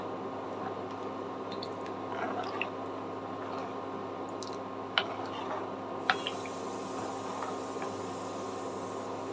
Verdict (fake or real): real